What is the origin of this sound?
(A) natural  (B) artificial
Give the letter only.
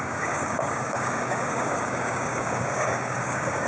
B